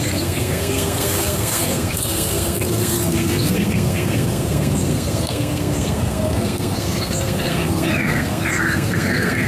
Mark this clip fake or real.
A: fake